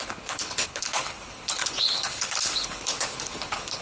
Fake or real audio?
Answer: fake